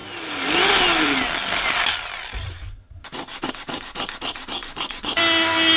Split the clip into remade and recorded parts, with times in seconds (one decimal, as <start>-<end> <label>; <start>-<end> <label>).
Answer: 0.0-4.6 recorded; 4.6-5.2 remade; 5.2-5.8 recorded

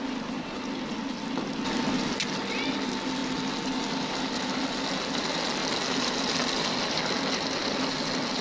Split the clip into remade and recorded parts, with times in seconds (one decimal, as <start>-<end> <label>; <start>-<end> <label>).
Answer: 0.0-8.4 recorded